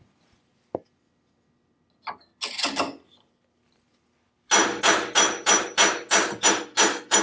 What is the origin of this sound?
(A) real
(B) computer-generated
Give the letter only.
A